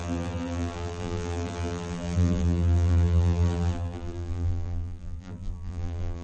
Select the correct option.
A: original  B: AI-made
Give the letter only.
B